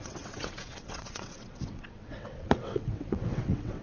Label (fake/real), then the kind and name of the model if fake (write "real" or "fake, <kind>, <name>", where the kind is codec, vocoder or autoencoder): fake, vocoder, WaveNeXt